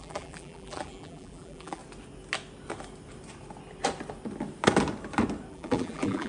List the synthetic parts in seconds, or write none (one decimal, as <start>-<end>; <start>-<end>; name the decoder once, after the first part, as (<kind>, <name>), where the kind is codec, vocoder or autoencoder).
0.0-1.8 (vocoder, BigVGAN v2); 5.5-6.3